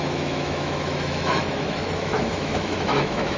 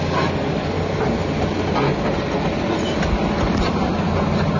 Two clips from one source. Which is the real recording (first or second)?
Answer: second